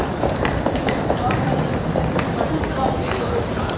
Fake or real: fake